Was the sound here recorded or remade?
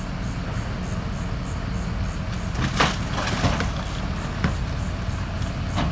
recorded